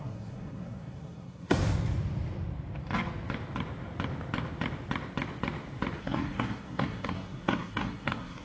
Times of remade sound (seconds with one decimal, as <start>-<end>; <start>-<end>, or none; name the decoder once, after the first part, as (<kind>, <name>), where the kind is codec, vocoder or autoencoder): 0.0-1.6 (codec, SNAC); 6.0-8.4